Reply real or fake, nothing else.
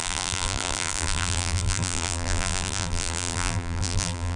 fake